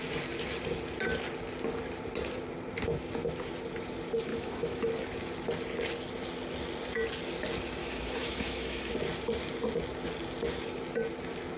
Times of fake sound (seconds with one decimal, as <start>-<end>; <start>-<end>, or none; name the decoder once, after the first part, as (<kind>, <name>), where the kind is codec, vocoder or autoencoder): 4.3-4.9 (autoencoder, DAC-VAE); 7.8-8.9